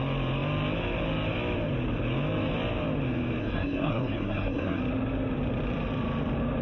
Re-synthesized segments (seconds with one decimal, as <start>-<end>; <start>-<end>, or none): 3.4-4.8